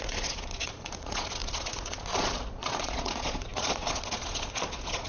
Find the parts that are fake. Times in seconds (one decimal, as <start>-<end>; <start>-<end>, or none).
0.0-5.1